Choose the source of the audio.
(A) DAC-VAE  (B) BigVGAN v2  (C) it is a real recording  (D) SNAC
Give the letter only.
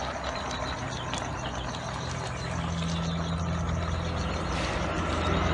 C